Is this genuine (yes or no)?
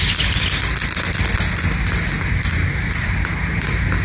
yes